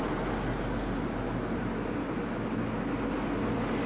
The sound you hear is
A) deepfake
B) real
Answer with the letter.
B